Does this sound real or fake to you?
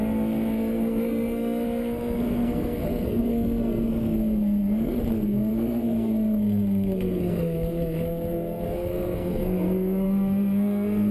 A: fake